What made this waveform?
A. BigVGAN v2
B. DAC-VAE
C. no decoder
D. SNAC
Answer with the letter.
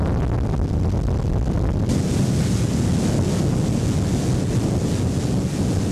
C